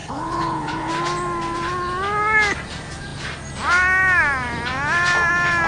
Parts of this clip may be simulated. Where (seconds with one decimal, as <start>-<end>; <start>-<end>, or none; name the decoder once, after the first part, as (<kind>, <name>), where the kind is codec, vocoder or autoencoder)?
0.0-0.9 (codec, HILCodec)